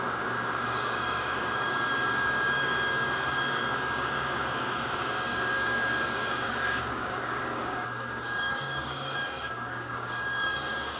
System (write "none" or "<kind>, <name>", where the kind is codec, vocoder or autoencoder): codec, DAC